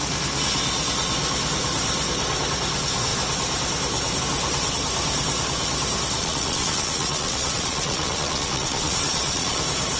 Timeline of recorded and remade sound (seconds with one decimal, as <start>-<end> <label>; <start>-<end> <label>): 0.0-6.2 recorded; 6.2-9.6 remade; 9.6-10.0 recorded